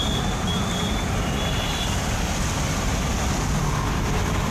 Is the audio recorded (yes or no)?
yes